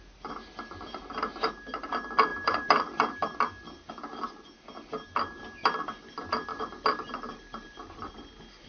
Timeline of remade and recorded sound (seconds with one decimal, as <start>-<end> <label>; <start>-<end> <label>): 0.0-2.3 recorded; 2.3-3.4 remade; 3.4-6.5 recorded; 6.5-8.1 remade; 8.1-8.7 recorded